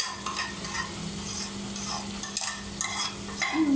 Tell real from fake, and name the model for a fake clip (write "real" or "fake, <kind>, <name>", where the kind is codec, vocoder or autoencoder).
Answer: real